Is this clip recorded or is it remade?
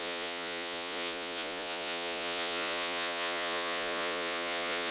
remade